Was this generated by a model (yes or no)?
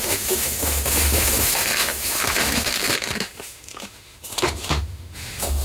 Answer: yes